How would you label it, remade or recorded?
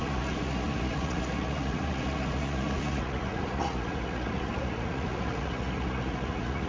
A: remade